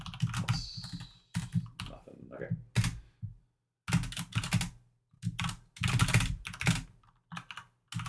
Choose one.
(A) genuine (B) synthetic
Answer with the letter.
A